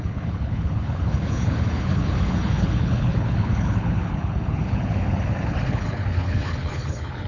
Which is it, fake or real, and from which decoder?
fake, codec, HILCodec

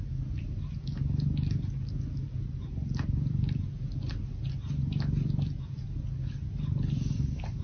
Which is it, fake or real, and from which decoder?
real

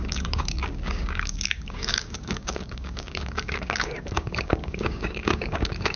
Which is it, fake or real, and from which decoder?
fake, codec, DAC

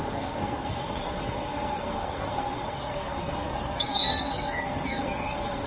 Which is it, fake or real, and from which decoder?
fake, codec, SNAC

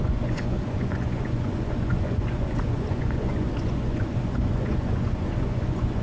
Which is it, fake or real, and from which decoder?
fake, vocoder, Vocos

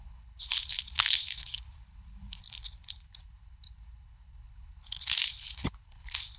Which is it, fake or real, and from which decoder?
fake, codec, HILCodec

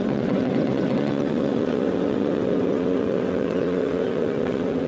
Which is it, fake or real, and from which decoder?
fake, vocoder, WaveNeXt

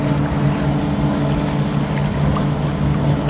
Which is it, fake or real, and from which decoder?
real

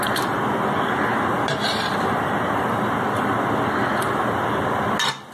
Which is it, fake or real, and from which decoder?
real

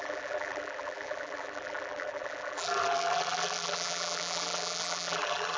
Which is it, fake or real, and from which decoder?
fake, vocoder, BigVGAN v2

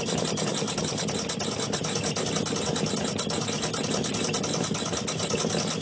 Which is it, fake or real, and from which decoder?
real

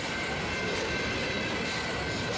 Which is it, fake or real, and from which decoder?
real